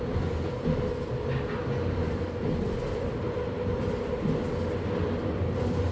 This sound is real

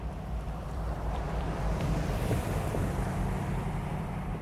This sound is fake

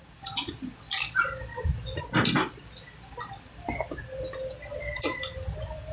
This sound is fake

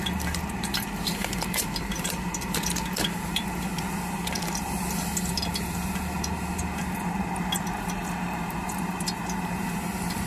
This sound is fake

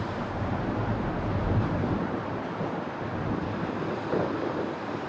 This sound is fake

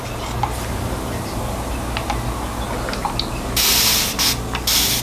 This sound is real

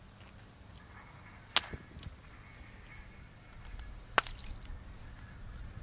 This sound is real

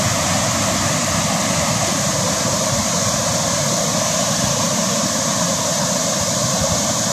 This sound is fake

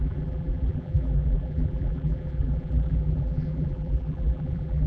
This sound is fake